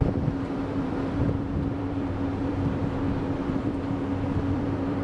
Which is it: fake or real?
fake